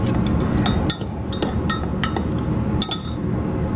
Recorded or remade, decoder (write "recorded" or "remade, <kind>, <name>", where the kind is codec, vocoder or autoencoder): recorded